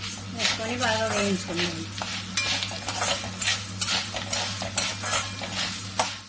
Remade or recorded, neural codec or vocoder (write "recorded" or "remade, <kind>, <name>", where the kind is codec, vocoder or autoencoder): recorded